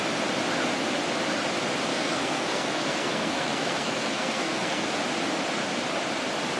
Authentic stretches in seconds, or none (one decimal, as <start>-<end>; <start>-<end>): 0.0-1.9; 4.9-6.6